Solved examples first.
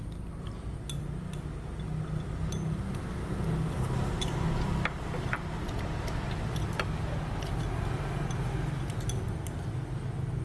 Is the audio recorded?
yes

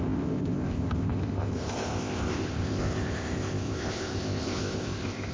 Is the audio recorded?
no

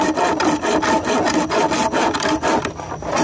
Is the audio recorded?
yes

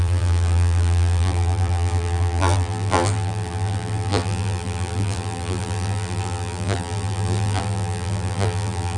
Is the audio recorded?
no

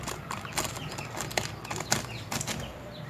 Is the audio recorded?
yes